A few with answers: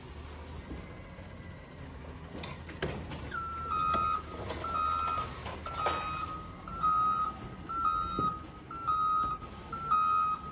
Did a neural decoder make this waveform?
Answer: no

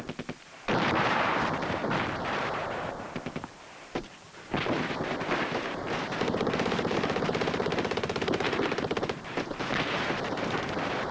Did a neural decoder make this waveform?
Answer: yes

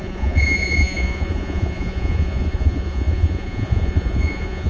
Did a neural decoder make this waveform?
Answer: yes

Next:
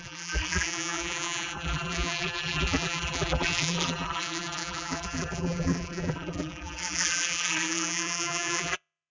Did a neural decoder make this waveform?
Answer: yes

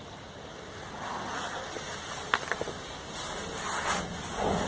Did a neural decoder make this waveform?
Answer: no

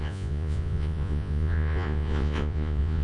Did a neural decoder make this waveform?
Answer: yes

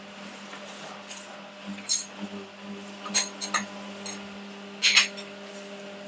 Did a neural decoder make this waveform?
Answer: no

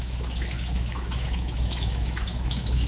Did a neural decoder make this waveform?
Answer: yes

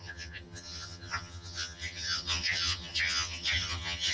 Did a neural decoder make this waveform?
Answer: yes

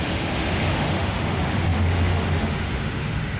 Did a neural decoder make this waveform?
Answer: yes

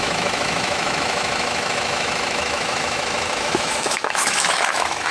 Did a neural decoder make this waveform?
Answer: yes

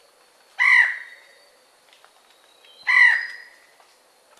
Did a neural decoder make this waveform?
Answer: no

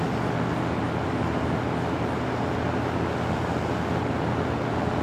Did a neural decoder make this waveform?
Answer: no